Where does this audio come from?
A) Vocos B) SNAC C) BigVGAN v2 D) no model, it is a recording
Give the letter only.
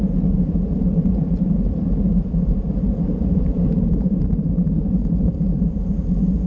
C